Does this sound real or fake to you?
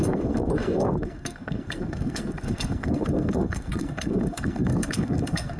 fake